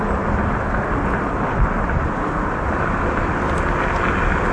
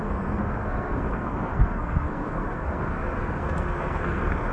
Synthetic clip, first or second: second